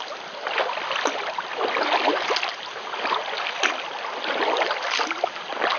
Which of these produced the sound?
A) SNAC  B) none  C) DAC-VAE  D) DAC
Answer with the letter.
B